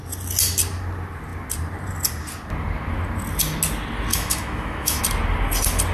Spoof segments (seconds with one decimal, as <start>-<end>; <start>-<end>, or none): 4.1-5.0